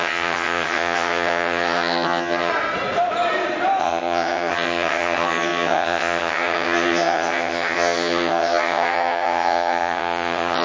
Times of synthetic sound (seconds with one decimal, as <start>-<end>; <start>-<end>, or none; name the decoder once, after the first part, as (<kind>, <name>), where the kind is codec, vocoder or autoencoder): 0.0-2.5 (vocoder, HiFi-GAN); 3.8-10.6